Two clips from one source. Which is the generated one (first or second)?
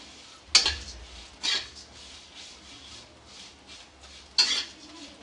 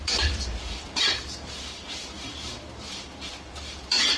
second